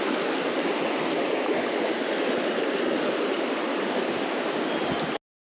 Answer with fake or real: real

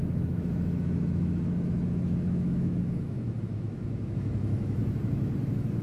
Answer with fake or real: fake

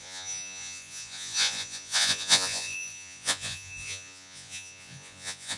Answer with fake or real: fake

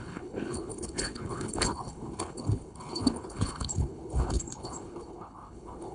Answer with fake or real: fake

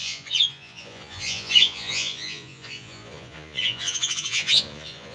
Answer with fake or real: fake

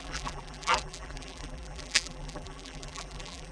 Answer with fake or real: fake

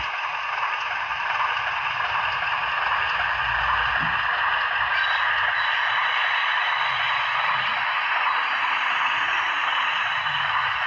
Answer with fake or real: real